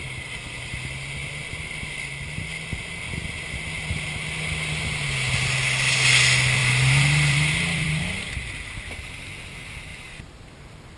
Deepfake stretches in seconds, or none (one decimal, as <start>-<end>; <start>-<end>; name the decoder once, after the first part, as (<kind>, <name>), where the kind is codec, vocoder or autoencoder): 6.6-8.5 (vocoder, BigVGAN v2); 9.9-10.6